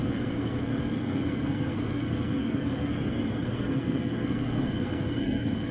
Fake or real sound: fake